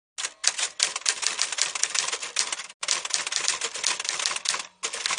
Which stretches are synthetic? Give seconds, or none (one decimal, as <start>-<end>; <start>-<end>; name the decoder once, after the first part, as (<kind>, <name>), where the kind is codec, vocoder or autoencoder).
none

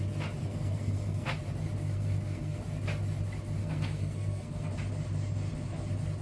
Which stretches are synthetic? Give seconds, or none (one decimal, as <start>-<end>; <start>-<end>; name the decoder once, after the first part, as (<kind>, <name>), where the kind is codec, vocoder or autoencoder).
0.5-1.4 (codec, SNAC); 1.8-2.6; 3.6-4.7

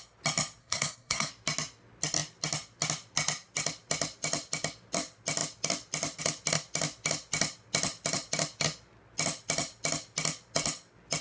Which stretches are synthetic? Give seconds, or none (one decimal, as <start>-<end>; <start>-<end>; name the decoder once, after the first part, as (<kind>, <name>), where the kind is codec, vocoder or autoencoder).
0.6-1.3 (codec, SNAC)

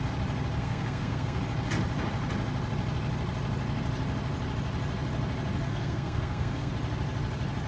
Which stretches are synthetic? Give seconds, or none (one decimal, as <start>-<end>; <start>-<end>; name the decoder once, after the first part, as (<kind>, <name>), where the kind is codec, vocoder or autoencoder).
0.6-1.4 (codec, SNAC); 5.7-6.7

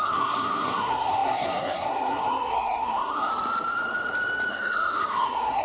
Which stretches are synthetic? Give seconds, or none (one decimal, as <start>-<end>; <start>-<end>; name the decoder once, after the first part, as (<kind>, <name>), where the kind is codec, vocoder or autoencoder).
0.0-3.3 (codec, SNAC); 4.5-5.6

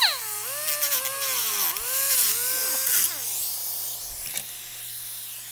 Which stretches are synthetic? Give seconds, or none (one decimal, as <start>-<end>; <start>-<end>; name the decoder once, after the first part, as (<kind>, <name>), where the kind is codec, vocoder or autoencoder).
none

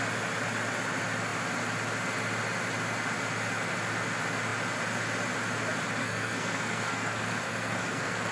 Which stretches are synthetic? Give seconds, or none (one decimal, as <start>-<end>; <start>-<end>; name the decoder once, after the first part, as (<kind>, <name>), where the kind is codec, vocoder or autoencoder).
6.0-8.3 (codec, SNAC)

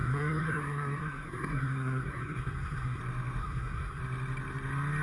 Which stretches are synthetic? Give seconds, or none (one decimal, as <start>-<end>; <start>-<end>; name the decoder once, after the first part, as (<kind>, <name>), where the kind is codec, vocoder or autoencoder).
0.0-3.0 (codec, SNAC); 3.4-4.0